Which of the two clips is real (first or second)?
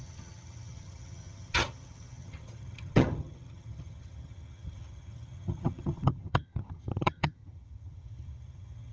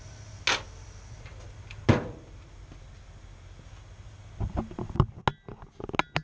second